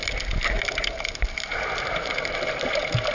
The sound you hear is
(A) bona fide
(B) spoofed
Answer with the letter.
A